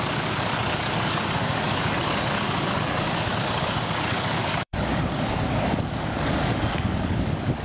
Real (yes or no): no